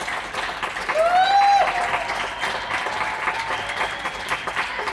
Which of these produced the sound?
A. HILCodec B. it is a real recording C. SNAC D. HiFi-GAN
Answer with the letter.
B